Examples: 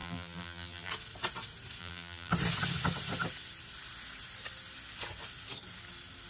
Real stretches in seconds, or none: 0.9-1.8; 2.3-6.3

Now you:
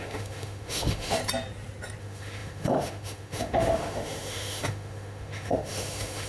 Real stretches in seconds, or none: 1.2-2.0

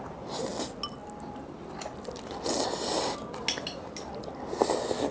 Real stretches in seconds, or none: 0.0-5.1

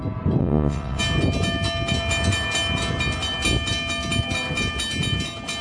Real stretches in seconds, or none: 0.0-0.4; 1.0-5.6

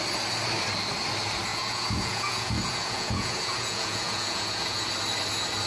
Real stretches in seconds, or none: 0.0-1.5; 4.9-5.7